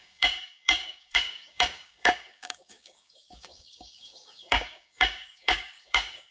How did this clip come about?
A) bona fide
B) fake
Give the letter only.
B